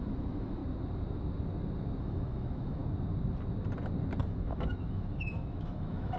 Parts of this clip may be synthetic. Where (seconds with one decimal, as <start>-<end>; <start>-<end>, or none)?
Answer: 0.0-0.6; 2.0-2.8; 4.2-6.2